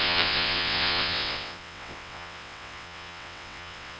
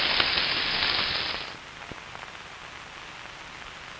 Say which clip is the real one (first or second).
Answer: second